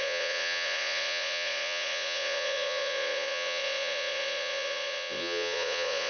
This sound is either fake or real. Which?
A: fake